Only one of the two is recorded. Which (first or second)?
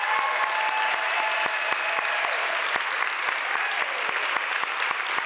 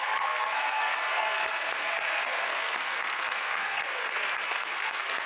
first